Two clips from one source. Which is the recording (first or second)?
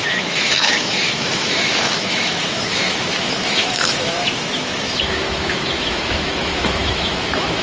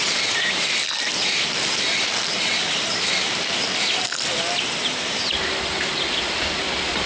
second